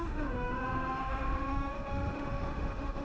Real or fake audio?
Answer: fake